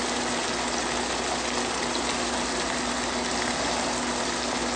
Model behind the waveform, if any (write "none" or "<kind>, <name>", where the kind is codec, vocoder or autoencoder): none